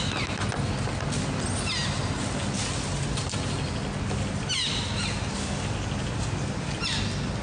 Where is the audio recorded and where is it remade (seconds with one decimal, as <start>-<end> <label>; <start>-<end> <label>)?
0.0-7.4 recorded